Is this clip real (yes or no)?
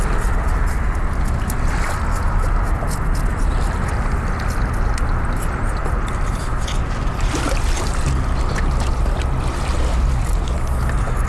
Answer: yes